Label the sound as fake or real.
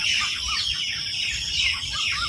real